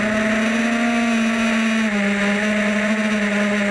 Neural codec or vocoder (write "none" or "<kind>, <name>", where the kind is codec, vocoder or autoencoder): none